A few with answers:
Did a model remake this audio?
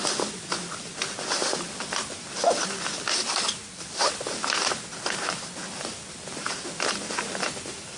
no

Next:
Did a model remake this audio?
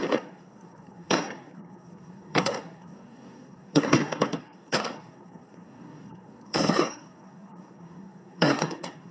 yes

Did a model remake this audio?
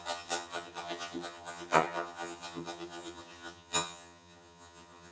yes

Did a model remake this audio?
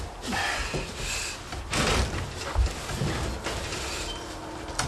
no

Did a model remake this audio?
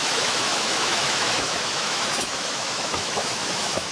yes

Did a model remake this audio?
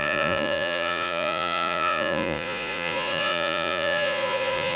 yes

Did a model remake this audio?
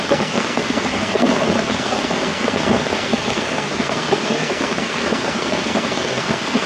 yes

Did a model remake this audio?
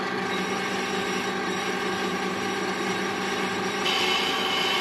no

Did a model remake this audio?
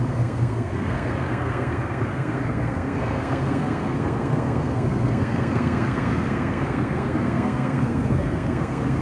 yes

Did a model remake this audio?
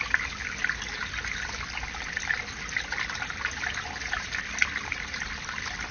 no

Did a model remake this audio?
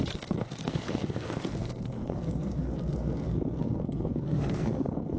yes